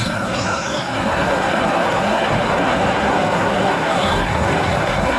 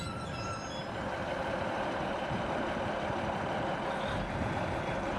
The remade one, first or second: first